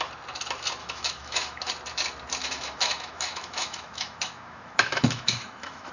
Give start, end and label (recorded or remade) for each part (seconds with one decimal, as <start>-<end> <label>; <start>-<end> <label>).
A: 0.0-0.8 recorded; 0.8-1.7 remade; 1.7-2.4 recorded; 2.4-5.9 remade